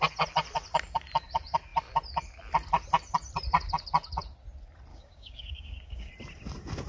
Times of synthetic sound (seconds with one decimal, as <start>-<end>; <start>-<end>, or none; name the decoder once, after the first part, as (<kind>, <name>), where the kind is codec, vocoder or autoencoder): 4.9-6.1 (codec, DAC)